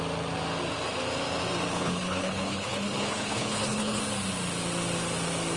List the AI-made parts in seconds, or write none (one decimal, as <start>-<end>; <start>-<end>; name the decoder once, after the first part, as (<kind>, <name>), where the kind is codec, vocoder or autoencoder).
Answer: 1.7-4.0 (codec, HILCodec)